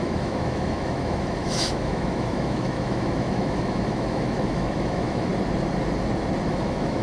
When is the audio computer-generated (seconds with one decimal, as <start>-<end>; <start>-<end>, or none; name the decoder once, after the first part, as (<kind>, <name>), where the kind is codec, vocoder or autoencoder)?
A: 0.0-5.3 (autoencoder, DAC-VAE); 6.5-7.0